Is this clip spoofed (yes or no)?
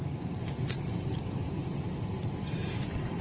no